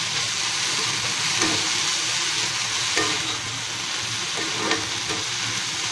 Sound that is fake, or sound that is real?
real